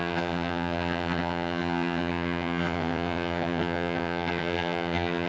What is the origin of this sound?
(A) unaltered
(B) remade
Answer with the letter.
B